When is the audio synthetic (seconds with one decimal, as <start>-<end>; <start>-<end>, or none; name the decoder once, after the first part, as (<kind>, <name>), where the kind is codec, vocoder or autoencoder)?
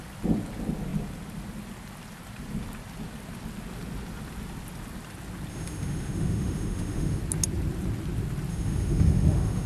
5.5-7.2 (autoencoder, DAC-VAE); 8.5-9.7